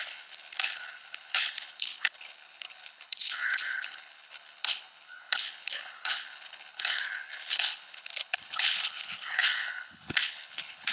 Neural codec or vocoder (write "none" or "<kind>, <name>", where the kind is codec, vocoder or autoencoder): codec, HILCodec